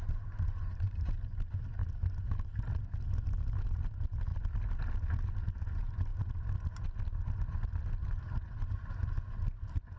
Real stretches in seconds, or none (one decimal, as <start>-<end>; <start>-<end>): 0.0-10.0